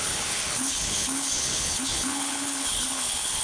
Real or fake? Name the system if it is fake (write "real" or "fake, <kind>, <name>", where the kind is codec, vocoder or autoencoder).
fake, codec, HILCodec